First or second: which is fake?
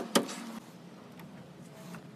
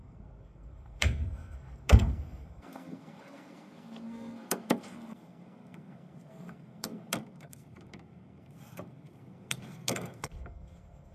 second